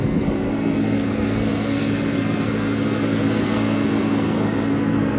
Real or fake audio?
fake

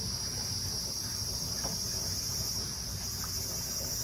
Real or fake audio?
real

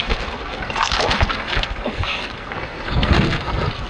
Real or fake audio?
fake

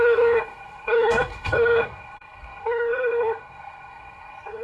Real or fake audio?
fake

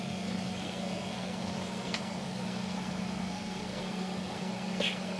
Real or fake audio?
fake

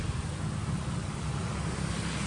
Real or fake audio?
real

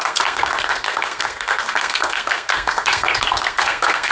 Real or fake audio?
fake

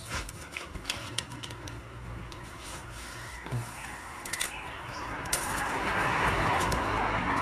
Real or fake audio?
fake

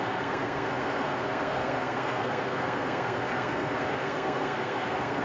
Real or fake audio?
fake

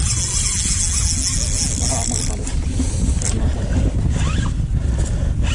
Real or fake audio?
real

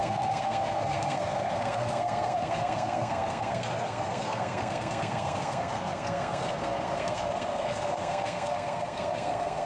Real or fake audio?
fake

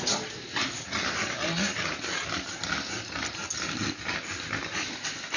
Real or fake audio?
real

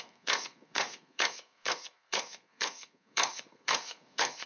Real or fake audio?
fake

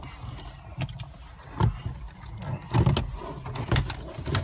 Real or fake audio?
real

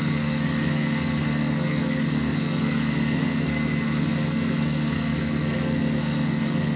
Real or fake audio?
fake